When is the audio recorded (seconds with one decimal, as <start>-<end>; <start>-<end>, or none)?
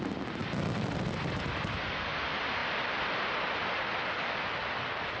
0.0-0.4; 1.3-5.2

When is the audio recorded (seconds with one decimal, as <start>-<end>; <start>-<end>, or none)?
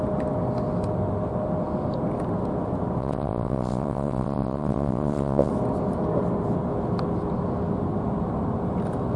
0.0-3.0; 5.5-9.2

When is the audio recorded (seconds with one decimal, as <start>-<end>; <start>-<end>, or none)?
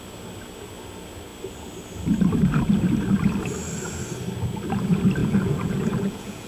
0.0-5.2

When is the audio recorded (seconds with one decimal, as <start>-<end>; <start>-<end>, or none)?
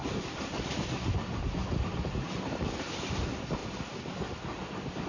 none